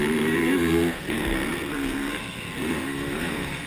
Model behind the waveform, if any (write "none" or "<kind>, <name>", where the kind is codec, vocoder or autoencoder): codec, SNAC